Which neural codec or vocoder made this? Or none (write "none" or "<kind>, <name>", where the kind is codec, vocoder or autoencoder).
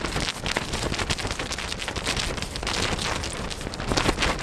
none